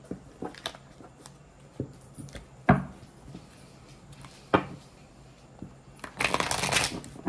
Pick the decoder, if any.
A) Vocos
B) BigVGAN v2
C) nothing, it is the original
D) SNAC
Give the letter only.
C